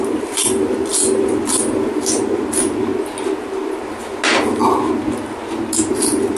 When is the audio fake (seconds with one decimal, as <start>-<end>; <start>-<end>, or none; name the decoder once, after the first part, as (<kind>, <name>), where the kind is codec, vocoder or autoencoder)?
none